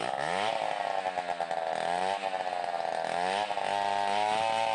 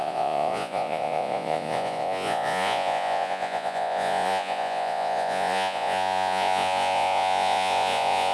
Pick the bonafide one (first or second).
first